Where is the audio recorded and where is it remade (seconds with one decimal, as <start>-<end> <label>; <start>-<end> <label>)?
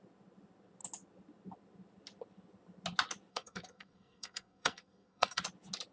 0.0-3.3 recorded; 3.3-5.4 remade; 5.4-5.9 recorded